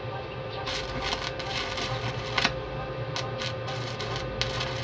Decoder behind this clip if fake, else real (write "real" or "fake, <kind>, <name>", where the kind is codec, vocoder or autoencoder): real